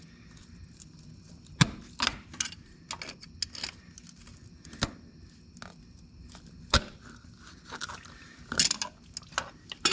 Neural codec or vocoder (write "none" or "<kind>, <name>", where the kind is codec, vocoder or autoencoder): none